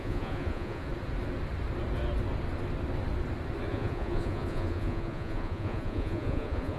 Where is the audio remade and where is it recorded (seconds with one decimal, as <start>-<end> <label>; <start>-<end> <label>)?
0.0-0.9 remade; 0.9-3.7 recorded; 3.7-6.8 remade